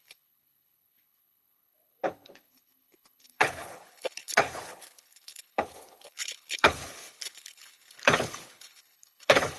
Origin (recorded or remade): remade